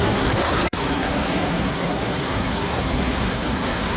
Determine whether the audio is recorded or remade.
remade